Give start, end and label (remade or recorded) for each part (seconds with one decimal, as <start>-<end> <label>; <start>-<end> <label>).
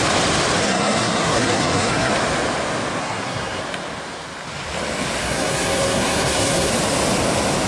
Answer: 0.0-0.6 recorded; 0.6-2.1 remade; 2.1-3.0 recorded; 3.0-3.6 remade; 3.6-5.2 recorded; 5.2-6.7 remade; 6.7-7.7 recorded